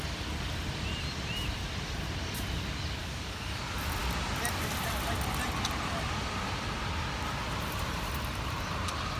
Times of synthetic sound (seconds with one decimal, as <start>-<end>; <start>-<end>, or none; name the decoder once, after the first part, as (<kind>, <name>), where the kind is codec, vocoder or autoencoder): 3.0-3.6 (codec, DAC)